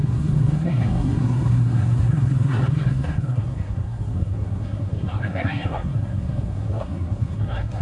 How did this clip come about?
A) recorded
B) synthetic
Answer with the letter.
B